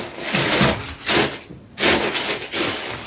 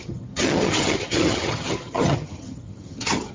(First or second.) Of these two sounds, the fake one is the second